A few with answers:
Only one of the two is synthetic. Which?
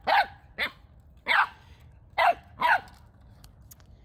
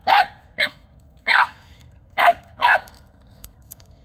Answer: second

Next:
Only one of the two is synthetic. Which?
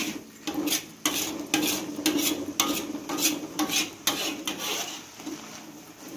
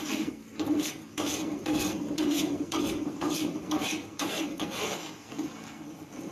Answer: second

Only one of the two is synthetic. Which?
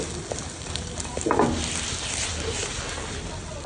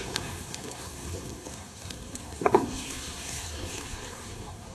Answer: second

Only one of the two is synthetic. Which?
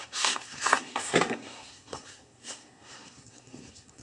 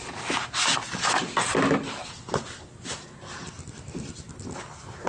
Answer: first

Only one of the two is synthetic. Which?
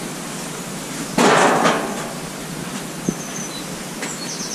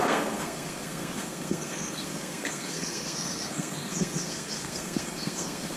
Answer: second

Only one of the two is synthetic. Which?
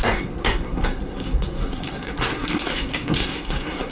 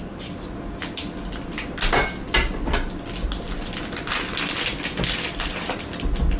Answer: first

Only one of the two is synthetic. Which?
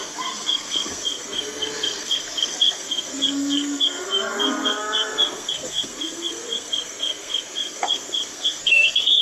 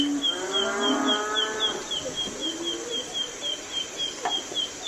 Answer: first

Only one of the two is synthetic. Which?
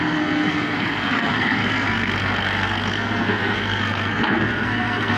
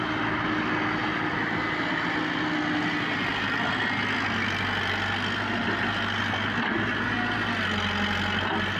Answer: first